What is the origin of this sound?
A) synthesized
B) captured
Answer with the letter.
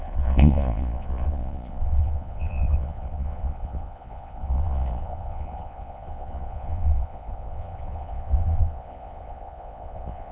A